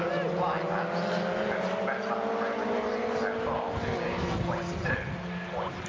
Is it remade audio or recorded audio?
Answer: recorded